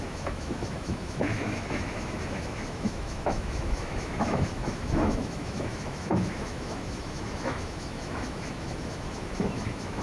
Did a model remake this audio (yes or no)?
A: yes